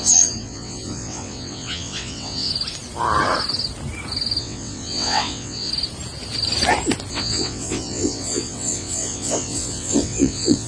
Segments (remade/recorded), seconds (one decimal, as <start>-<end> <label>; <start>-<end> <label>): 0.0-2.5 remade; 2.5-4.4 recorded; 4.4-5.7 remade; 5.7-7.1 recorded; 7.1-10.7 remade